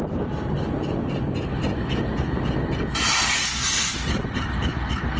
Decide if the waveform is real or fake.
real